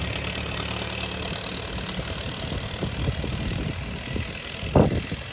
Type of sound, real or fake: real